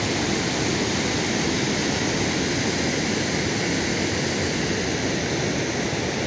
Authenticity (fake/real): real